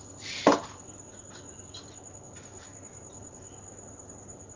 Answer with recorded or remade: recorded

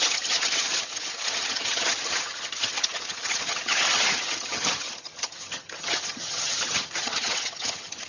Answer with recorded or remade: remade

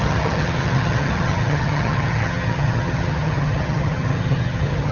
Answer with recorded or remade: remade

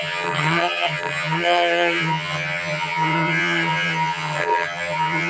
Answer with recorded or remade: remade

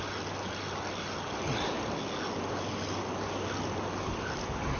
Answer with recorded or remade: recorded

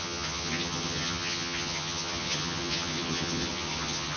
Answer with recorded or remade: remade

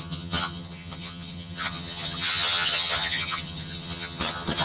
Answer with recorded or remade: remade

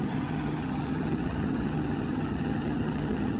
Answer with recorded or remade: remade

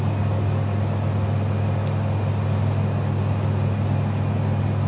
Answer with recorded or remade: recorded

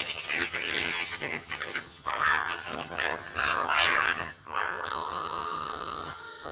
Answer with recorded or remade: remade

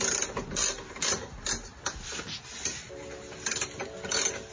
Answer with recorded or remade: recorded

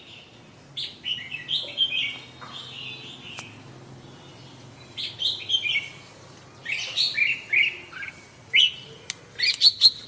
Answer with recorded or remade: recorded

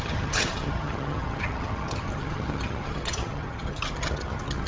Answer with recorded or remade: remade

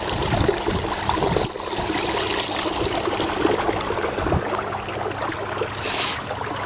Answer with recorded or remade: recorded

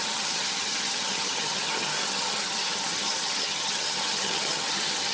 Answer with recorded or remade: remade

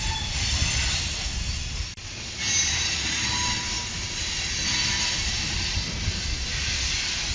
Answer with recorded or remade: recorded